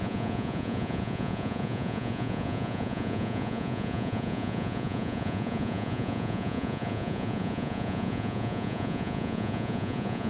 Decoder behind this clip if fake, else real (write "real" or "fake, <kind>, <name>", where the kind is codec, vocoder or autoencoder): fake, vocoder, Vocos